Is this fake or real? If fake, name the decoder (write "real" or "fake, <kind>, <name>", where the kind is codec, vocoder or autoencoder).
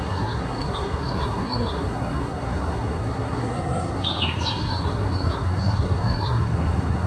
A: fake, codec, SNAC